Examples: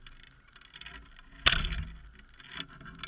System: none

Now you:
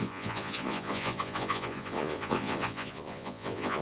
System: vocoder, Vocos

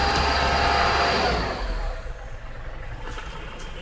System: none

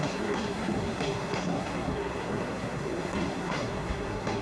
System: codec, SNAC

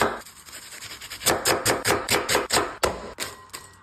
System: none